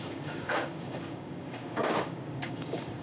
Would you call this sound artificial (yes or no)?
yes